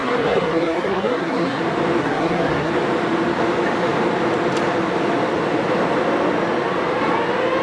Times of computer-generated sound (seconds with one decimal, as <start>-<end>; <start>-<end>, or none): 0.0-1.6; 2.0-2.7